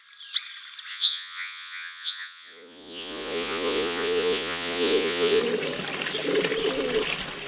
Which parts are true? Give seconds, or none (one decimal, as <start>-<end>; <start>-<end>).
0.0-0.9; 5.4-7.5